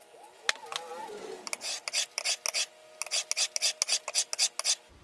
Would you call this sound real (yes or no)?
yes